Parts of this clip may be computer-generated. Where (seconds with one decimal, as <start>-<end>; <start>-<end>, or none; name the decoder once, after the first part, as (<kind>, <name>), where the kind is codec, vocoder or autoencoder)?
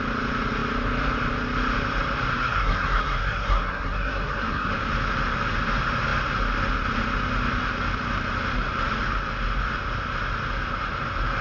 2.3-4.7 (codec, SNAC)